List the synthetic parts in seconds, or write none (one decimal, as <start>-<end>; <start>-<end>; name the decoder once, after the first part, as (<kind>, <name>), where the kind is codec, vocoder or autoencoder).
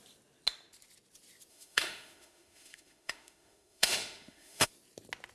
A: 1.5-4.7 (autoencoder, DAC-VAE)